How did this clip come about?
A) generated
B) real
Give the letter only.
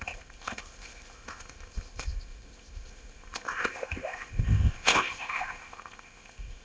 A